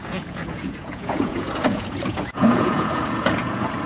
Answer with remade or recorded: remade